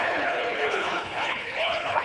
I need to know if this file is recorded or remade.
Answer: remade